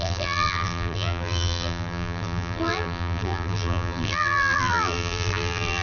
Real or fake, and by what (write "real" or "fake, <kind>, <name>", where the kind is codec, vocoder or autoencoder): fake, vocoder, BigVGAN v2